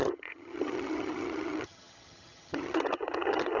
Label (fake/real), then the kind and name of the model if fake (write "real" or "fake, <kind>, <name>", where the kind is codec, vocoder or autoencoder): fake, vocoder, HiFi-GAN